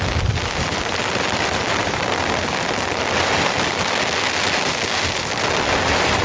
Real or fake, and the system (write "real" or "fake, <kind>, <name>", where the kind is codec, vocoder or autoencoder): real